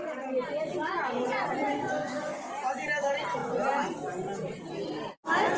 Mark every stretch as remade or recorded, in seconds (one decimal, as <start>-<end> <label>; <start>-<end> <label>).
0.0-1.7 recorded; 1.7-2.5 remade; 2.5-5.6 recorded